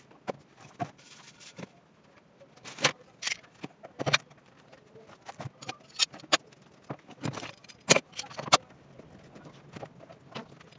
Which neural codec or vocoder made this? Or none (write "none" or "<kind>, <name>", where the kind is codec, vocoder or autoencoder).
none